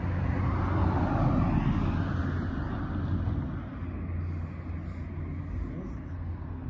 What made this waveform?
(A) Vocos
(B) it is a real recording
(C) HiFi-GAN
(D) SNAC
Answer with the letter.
B